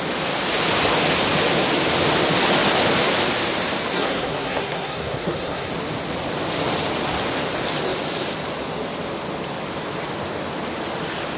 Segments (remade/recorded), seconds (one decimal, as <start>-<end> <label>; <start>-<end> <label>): 0.0-3.9 recorded; 3.9-5.7 remade; 5.7-11.4 recorded